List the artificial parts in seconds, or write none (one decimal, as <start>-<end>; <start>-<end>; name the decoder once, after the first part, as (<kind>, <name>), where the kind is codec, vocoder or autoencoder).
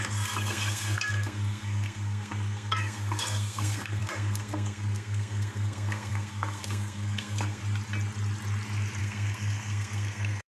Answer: 0.0-7.6 (codec, SNAC); 9.0-10.6